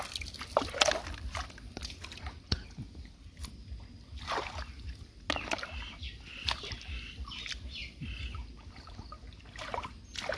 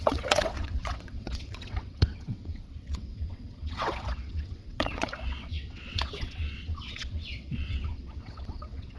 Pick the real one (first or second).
first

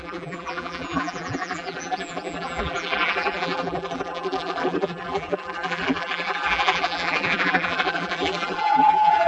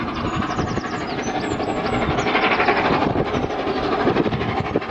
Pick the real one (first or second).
second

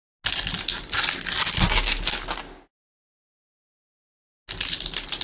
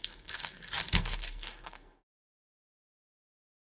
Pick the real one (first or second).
first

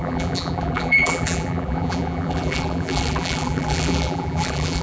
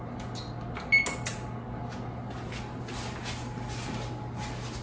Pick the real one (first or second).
second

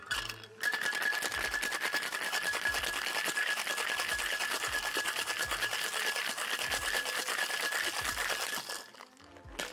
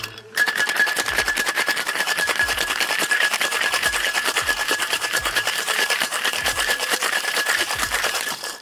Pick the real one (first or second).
first